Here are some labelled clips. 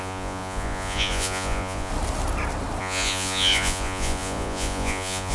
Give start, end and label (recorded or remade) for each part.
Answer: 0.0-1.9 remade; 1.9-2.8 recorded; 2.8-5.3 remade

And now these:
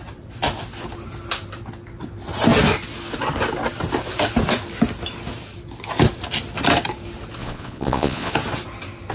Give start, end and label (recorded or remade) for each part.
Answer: 0.0-7.4 recorded; 7.4-8.3 remade; 8.3-9.1 recorded